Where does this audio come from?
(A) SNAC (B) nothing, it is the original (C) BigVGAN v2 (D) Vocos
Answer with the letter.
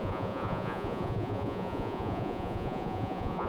D